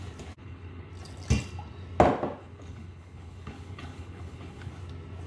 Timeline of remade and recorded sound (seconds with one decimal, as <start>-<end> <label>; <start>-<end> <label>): 0.0-0.4 recorded; 0.4-0.9 remade; 0.9-2.4 recorded; 2.4-4.7 remade; 4.7-5.3 recorded